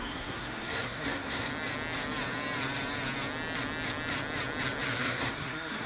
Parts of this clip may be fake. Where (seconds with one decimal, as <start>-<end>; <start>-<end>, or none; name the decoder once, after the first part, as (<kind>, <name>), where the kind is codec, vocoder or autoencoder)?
0.0-1.5 (codec, SNAC); 5.0-5.9